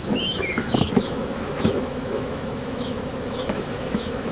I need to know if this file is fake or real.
fake